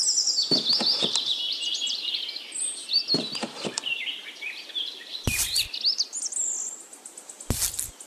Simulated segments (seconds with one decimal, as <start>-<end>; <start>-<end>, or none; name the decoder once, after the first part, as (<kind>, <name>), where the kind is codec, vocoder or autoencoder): 0.7-2.2 (vocoder, BigVGAN v2); 2.8-5.8